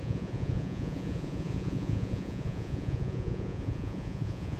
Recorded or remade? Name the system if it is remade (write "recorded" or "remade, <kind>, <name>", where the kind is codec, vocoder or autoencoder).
remade, vocoder, Vocos